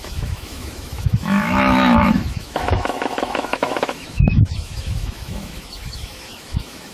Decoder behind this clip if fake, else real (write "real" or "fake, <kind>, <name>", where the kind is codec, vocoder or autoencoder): fake, autoencoder, DAC-VAE